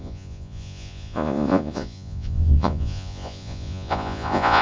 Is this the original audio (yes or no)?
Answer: no